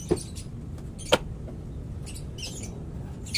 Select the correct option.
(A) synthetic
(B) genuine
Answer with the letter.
B